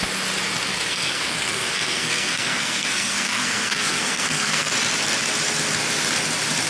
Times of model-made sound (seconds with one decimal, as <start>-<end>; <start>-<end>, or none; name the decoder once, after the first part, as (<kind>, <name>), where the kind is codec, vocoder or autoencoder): 0.7-4.7 (codec, SNAC)